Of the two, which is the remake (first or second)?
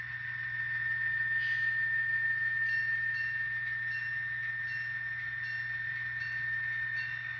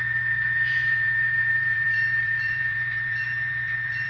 second